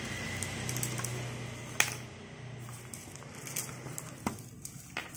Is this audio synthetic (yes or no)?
no